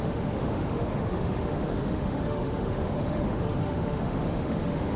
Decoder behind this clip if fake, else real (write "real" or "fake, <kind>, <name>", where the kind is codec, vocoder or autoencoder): fake, autoencoder, DAC-VAE